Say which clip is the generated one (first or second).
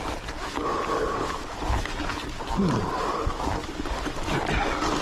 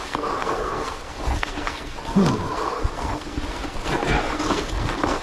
second